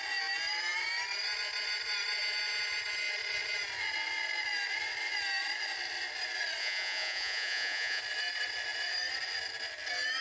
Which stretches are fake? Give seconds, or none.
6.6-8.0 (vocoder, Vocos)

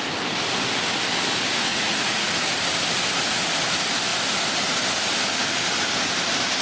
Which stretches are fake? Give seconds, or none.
1.7-2.3 (vocoder, Vocos)

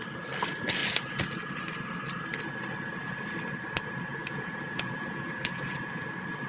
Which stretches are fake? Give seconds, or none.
4.1-6.1 (vocoder, Vocos)

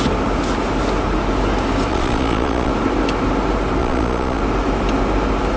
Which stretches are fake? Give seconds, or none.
1.9-2.7 (vocoder, Vocos); 3.8-4.4

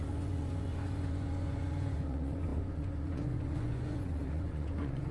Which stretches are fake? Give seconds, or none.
0.0-5.1 (vocoder, Vocos)

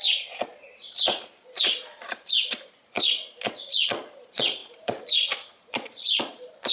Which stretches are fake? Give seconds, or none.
0.0-6.7 (vocoder, Vocos)